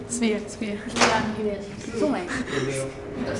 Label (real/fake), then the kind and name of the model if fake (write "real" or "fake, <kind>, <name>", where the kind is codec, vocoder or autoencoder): real